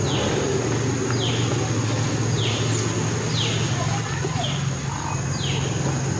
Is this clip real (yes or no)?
yes